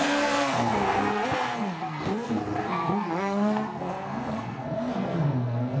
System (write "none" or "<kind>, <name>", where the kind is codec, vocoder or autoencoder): codec, SNAC